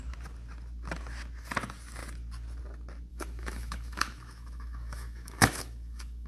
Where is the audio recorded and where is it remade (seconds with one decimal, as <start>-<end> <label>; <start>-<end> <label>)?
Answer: 0.0-3.1 recorded; 3.1-6.3 remade